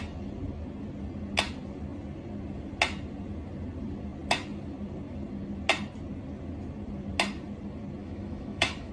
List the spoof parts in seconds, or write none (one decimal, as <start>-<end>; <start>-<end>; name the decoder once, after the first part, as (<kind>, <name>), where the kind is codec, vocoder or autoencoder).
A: 8.0-8.9 (autoencoder, DAC-VAE)